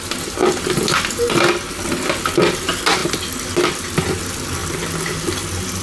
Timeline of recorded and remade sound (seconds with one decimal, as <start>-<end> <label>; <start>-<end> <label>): 0.0-5.8 recorded